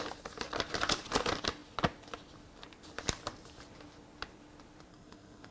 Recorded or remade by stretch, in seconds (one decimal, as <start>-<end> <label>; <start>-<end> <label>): 0.0-4.9 recorded; 4.9-5.5 remade